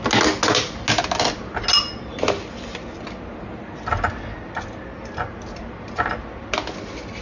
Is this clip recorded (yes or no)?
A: yes